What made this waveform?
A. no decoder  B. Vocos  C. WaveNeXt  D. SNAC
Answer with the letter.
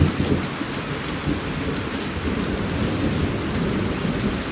A